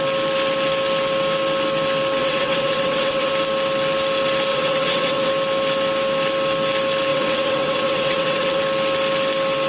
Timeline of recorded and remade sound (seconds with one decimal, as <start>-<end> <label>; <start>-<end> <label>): 0.0-2.2 recorded; 2.2-3.3 remade; 3.3-4.5 recorded; 4.5-5.3 remade; 5.3-7.1 recorded; 7.1-8.6 remade; 8.6-9.7 recorded